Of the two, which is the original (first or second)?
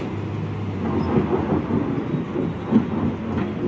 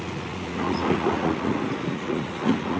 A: first